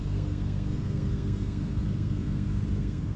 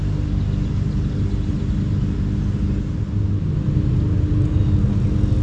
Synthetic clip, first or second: first